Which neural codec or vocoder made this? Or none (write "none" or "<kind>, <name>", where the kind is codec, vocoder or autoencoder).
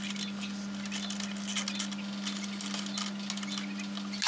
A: none